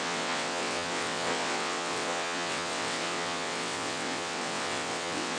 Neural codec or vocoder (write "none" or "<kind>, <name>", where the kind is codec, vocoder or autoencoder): vocoder, WaveNeXt